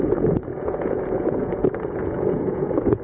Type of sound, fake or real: fake